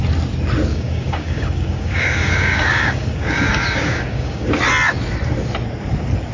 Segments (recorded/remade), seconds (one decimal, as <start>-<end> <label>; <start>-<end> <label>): 0.0-0.7 recorded; 0.7-4.5 remade; 4.5-6.3 recorded